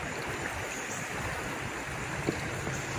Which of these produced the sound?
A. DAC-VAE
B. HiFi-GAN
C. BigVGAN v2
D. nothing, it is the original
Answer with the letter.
D